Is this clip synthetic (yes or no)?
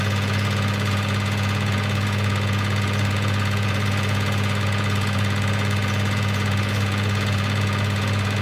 yes